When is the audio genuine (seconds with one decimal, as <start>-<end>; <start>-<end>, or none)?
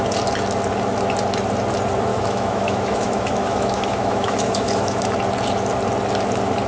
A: 0.0-2.1; 5.0-6.7